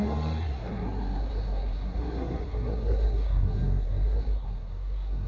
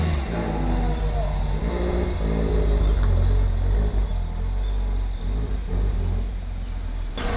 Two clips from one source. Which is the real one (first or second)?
second